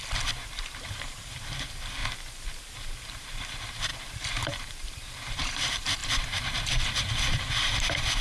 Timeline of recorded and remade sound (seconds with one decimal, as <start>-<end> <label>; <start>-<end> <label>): 0.0-2.0 remade; 2.0-2.6 recorded; 2.6-8.2 remade